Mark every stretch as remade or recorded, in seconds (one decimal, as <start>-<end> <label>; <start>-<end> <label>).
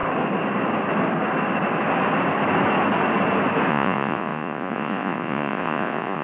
0.0-3.7 recorded; 3.7-6.2 remade